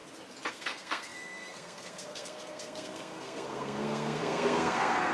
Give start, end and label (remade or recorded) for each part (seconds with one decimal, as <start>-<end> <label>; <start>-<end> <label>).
0.0-0.5 recorded; 0.5-5.1 remade